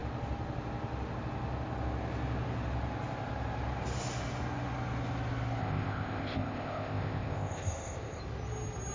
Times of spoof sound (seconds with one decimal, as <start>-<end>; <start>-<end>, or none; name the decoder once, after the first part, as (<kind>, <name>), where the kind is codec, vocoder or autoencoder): 5.6-8.2 (codec, ZipCodec)